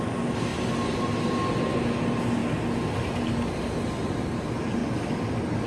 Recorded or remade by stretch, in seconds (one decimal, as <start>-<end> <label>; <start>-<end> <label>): 0.0-5.7 recorded

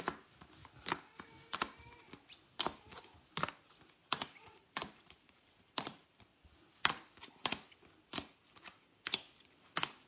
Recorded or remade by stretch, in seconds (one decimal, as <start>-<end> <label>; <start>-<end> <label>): 0.0-4.0 recorded; 4.0-6.4 remade; 6.4-10.1 recorded

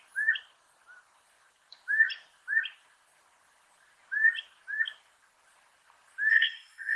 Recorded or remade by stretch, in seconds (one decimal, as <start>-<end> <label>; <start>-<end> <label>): 0.0-6.3 recorded; 6.3-7.0 remade

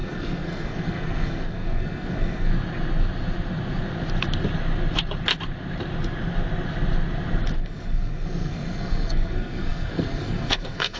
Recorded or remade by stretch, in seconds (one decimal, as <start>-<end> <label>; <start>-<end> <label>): 0.0-2.5 remade; 2.5-7.6 recorded; 7.6-11.0 remade

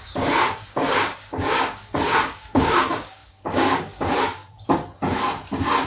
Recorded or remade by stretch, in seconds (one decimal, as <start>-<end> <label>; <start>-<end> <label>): 0.0-4.4 remade; 4.4-5.9 recorded

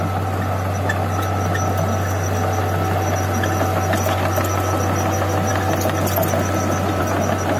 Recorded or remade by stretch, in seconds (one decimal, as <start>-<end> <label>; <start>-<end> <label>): 0.0-7.6 recorded

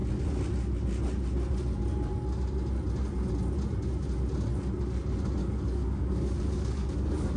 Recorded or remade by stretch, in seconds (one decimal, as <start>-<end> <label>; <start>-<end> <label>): 0.0-5.4 recorded; 5.4-7.4 remade